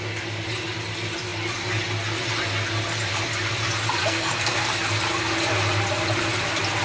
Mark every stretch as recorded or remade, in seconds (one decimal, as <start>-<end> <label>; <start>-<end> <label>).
0.0-4.0 recorded; 4.0-4.7 remade; 4.7-6.8 recorded